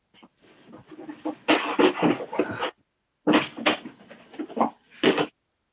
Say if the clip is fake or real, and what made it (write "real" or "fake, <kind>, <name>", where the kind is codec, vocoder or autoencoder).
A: real